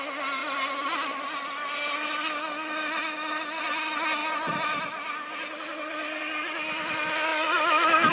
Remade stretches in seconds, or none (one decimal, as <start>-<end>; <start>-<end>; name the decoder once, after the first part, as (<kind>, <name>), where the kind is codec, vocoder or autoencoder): none